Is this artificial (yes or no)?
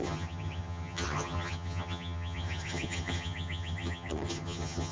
yes